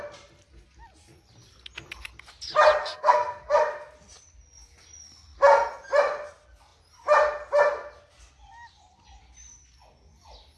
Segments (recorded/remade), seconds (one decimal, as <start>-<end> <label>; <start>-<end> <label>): 0.0-2.8 recorded; 2.8-3.6 remade; 3.6-10.6 recorded